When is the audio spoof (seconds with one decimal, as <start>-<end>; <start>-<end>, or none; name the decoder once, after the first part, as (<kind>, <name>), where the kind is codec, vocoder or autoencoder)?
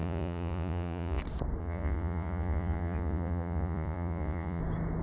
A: 0.0-1.2 (vocoder, Vocos); 1.6-4.6